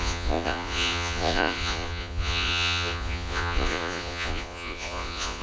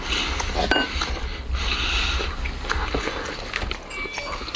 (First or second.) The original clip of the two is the second